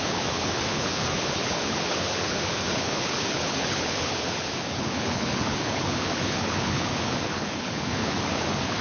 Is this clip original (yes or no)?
no